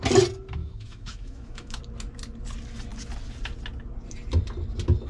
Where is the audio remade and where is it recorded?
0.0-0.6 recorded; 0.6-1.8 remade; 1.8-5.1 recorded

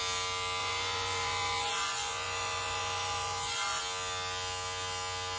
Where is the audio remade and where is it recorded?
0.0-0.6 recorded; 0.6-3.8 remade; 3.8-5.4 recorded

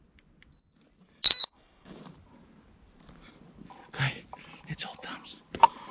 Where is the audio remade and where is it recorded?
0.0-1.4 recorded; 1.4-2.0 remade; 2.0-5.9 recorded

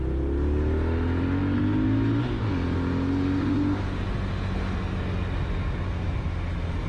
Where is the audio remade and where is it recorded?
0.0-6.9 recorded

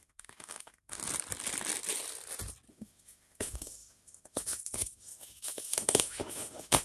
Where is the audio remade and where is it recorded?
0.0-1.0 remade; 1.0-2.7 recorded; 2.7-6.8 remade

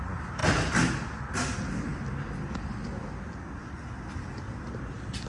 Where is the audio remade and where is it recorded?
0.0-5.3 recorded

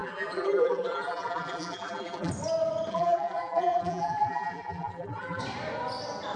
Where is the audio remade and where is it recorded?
0.0-2.3 remade; 2.3-2.9 recorded; 2.9-5.4 remade; 5.4-6.4 recorded

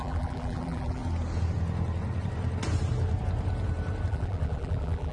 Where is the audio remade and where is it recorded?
0.0-1.0 remade; 1.0-4.1 recorded; 4.1-5.1 remade